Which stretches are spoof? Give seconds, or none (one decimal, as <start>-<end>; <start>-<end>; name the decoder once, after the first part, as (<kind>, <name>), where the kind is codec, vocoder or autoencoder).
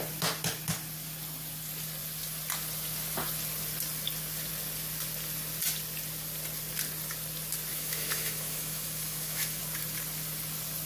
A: 7.7-9.6 (autoencoder, DAC-VAE)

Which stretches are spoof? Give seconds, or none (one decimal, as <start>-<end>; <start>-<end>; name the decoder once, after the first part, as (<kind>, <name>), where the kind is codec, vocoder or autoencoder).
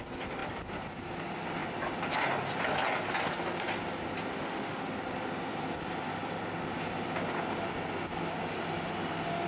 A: 4.3-4.8 (autoencoder, DAC-VAE)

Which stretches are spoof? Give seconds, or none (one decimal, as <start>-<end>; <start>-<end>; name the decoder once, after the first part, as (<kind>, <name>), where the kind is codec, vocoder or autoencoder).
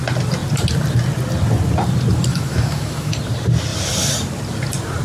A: 2.3-3.1 (autoencoder, DAC-VAE)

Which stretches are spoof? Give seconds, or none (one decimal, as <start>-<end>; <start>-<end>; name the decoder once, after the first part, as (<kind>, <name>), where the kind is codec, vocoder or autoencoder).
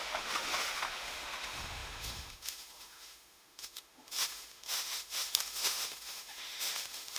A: 0.0-7.2 (autoencoder, DAC-VAE)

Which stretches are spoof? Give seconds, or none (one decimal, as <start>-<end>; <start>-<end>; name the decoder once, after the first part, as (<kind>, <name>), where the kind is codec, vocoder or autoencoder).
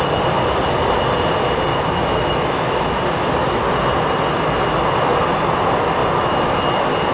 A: 1.7-3.0 (autoencoder, DAC-VAE)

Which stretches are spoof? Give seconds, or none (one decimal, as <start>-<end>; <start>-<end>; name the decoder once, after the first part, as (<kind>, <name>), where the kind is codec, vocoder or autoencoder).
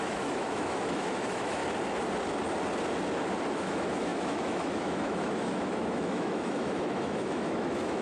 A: 0.0-1.6 (autoencoder, DAC-VAE); 3.5-8.0